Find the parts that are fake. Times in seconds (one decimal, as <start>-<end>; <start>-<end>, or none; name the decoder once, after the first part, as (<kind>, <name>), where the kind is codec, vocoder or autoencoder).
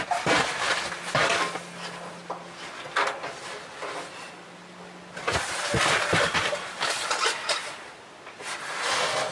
none